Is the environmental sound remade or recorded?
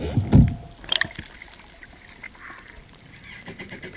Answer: recorded